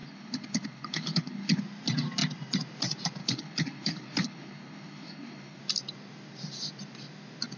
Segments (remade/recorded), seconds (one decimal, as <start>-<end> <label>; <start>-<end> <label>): 0.0-1.6 remade; 1.6-3.2 recorded; 3.2-5.6 remade; 5.6-7.6 recorded